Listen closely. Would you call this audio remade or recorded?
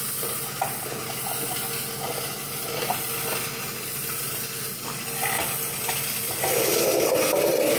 recorded